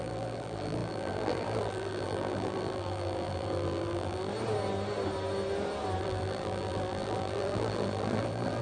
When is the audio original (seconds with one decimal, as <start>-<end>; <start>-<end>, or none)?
4.3-6.0